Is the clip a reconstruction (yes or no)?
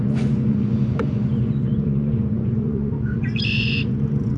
yes